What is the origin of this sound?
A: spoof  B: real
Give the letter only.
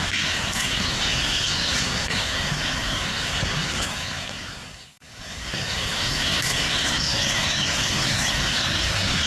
A